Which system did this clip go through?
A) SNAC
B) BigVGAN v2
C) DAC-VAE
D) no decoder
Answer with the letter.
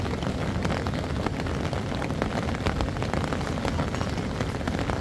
D